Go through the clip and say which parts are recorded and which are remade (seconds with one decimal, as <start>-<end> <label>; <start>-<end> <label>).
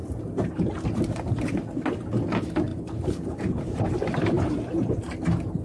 0.0-1.6 remade; 1.6-2.7 recorded; 2.7-4.2 remade; 4.2-5.6 recorded